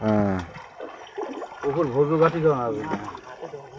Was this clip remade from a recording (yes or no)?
no